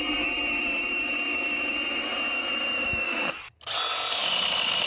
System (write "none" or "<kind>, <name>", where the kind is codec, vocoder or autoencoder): none